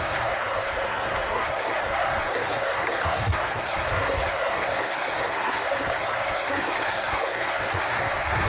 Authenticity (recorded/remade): remade